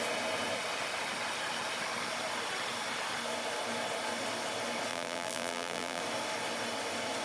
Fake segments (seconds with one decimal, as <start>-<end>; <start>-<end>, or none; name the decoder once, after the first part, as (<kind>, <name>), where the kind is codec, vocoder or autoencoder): 4.9-6.0 (vocoder, BigVGAN v2)